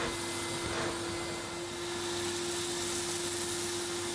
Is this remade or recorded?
recorded